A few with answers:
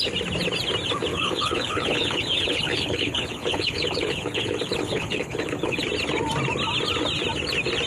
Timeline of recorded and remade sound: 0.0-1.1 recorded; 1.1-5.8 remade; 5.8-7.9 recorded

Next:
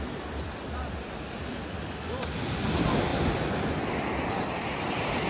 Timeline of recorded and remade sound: 0.0-3.1 remade; 3.1-4.7 recorded; 4.7-5.3 remade

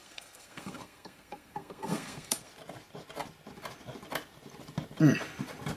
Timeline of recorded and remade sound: 0.0-2.5 remade; 2.5-5.8 recorded

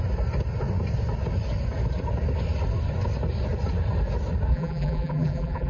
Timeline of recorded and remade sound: 0.0-4.5 recorded; 4.5-5.7 remade

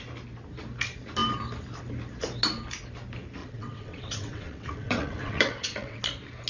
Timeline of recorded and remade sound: 0.0-3.4 recorded; 3.4-6.0 remade; 6.0-6.5 recorded

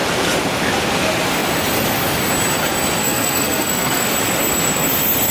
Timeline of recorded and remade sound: 0.0-3.0 recorded; 3.0-4.1 remade; 4.1-5.3 recorded

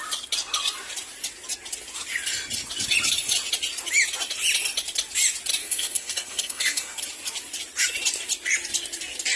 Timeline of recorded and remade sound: 0.0-5.6 recorded; 5.6-7.0 remade; 7.0-9.4 recorded